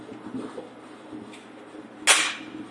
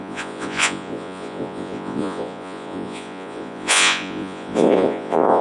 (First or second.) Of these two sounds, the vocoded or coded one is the second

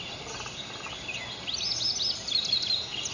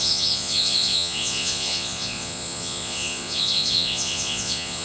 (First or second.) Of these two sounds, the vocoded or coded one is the second